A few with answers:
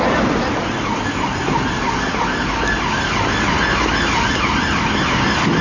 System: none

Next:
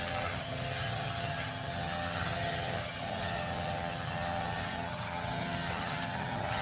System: vocoder, HiFi-GAN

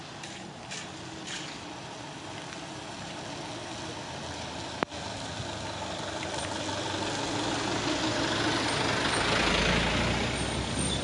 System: none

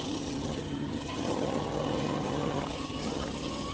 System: vocoder, HiFi-GAN